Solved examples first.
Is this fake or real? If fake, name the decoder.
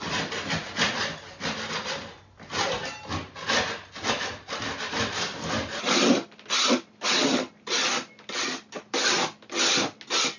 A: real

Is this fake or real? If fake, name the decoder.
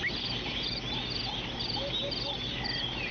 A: real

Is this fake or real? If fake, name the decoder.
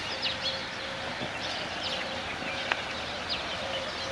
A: real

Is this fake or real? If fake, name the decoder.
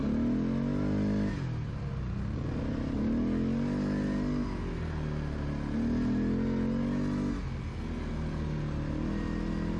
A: real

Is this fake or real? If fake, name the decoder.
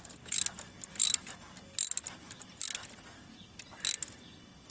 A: real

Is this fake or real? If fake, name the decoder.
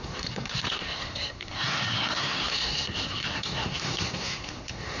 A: fake, codec, SNAC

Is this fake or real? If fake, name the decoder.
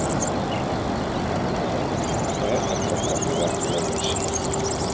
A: real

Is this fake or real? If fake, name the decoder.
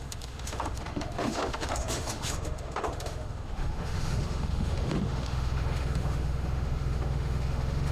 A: fake, autoencoder, DAC-VAE